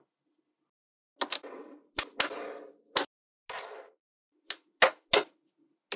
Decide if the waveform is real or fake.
real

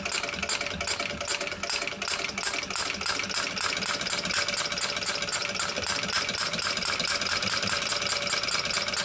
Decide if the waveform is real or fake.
real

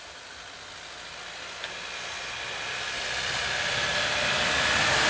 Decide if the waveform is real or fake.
real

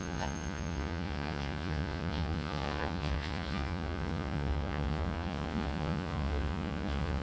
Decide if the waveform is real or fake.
fake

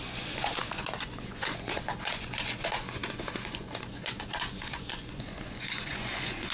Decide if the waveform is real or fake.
fake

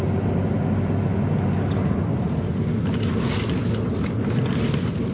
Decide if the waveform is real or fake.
real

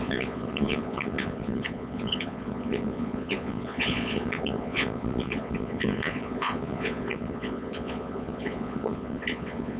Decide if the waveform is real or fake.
fake